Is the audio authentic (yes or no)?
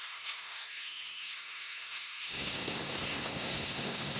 no